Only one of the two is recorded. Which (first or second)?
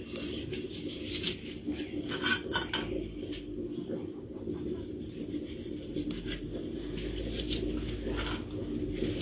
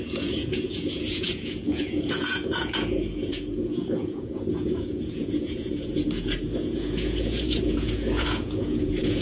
first